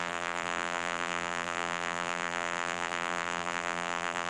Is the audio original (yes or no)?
no